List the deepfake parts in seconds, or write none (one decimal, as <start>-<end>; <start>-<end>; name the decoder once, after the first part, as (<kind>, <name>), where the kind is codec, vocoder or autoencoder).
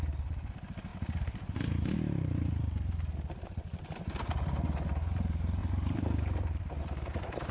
5.6-6.8 (vocoder, BigVGAN v2)